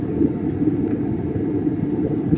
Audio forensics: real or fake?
real